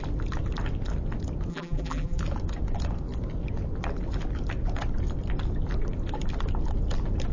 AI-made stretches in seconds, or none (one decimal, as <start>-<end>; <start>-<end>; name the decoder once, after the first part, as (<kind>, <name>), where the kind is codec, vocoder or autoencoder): 1.5-2.2 (vocoder, BigVGAN v2)